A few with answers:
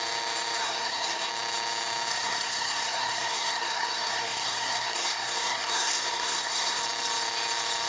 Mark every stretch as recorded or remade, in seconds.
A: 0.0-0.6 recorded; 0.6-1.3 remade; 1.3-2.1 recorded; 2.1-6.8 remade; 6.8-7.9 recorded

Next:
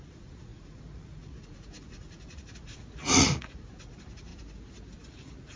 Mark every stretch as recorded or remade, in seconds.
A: 0.0-4.3 remade; 4.3-5.0 recorded; 5.0-5.6 remade

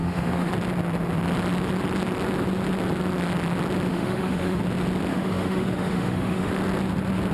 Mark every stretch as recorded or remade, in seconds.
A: 0.0-0.5 remade; 0.5-3.9 recorded; 3.9-4.6 remade; 4.6-5.1 recorded; 5.1-6.5 remade; 6.5-7.3 recorded